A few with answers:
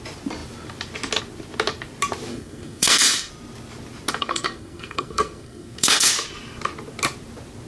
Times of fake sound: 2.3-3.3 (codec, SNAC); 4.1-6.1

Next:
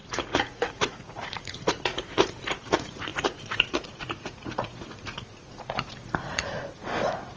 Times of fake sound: 0.0-7.4 (vocoder, Vocos)

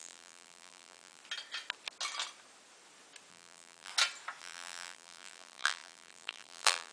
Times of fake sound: 0.0-1.2 (vocoder, BigVGAN v2); 3.3-3.9; 4.4-6.9

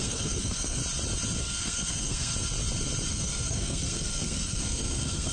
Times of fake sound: 0.0-0.8 (codec, SNAC); 1.4-2.3; 3.1-5.3

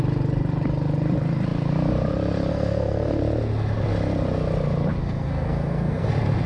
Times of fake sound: 2.5-3.2 (codec, SNAC); 5.0-6.1

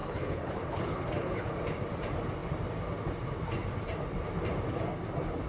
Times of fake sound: 0.0-1.4 (codec, HILCodec)